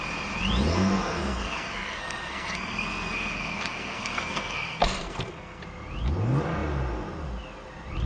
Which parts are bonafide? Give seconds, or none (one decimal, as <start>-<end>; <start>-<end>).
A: 0.0-0.7; 5.6-8.1